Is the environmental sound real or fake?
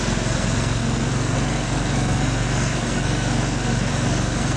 fake